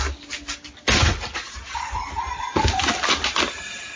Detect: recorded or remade recorded